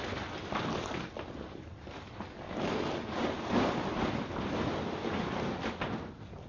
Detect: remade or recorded recorded